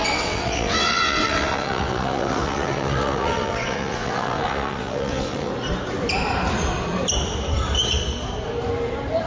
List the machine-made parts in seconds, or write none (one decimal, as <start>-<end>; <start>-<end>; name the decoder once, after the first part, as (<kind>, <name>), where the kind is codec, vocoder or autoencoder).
0.0-5.5 (vocoder, WaveNeXt)